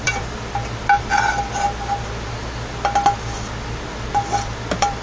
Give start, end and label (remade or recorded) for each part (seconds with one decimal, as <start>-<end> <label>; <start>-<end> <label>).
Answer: 0.0-1.1 remade; 1.1-4.1 recorded; 4.1-5.0 remade